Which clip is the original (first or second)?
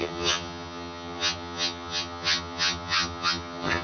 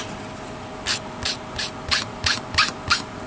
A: second